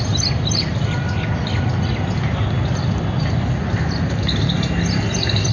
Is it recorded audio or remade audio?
recorded